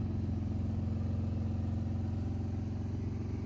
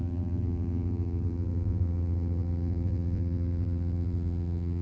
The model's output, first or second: second